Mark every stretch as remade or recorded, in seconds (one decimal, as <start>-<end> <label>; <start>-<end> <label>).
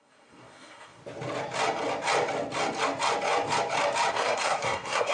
0.0-1.0 remade; 1.0-4.1 recorded; 4.1-5.1 remade